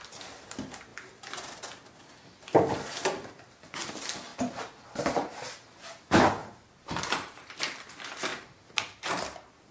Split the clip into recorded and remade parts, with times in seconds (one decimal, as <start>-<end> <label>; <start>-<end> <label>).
0.0-4.3 recorded; 4.3-5.4 remade; 5.4-6.4 recorded; 6.4-7.5 remade; 7.5-8.3 recorded; 8.3-9.7 remade